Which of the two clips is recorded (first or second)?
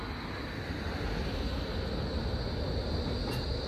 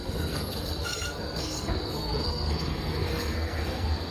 first